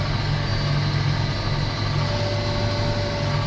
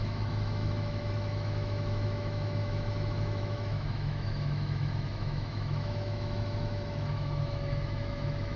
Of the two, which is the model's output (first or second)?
second